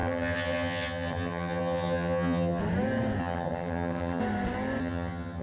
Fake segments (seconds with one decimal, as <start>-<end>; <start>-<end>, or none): 0.0-2.6; 3.2-4.2; 4.8-5.4